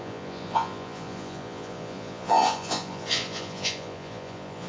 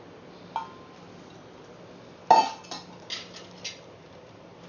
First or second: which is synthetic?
first